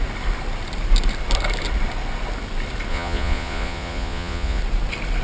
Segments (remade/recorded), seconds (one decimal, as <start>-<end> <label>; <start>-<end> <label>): 0.0-2.9 recorded; 2.9-4.6 remade; 4.6-5.2 recorded